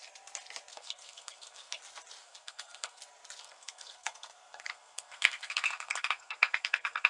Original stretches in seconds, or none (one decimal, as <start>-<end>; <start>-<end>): 0.0-0.7; 1.8-2.2; 3.0-3.4